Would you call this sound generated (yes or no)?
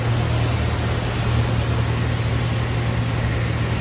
no